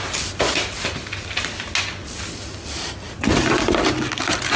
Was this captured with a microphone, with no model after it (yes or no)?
yes